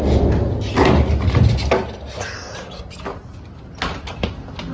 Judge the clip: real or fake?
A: real